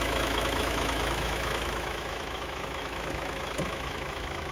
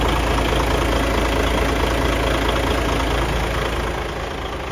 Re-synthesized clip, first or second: first